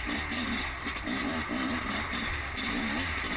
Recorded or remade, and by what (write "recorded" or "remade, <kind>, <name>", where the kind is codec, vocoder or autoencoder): recorded